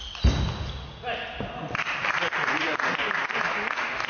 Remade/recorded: recorded